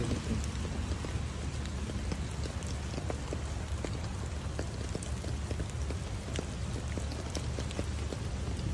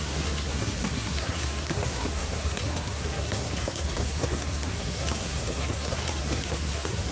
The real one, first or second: first